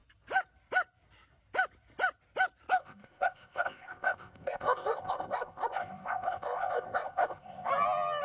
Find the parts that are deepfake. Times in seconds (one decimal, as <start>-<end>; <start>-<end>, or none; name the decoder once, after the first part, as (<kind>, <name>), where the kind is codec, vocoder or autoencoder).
2.8-7.7 (codec, ZipCodec)